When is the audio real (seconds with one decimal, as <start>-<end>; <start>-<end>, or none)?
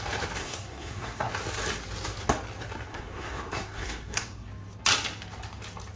0.0-0.4; 1.3-2.9; 4.5-6.0